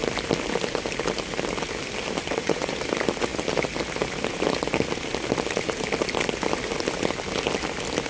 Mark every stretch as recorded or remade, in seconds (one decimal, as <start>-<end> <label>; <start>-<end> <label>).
0.0-2.2 recorded; 2.2-2.7 remade; 2.7-8.1 recorded